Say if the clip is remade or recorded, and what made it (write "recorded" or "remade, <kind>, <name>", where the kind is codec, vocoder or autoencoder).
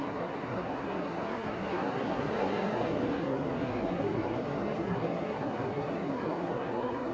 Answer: remade, codec, SNAC